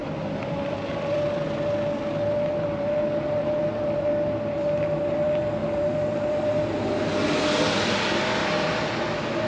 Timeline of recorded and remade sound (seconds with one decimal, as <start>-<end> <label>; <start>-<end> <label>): 0.0-1.2 remade; 1.2-8.4 recorded; 8.4-9.0 remade; 9.0-9.5 recorded